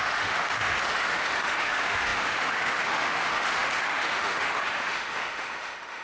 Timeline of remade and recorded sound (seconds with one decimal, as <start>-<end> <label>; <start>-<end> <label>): 0.0-6.0 remade